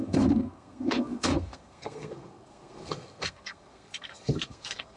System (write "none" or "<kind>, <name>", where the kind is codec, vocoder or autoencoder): codec, SNAC